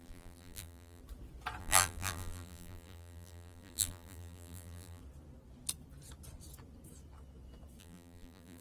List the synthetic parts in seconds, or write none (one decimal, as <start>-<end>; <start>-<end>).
0.0-1.0; 1.6-5.0; 7.8-8.6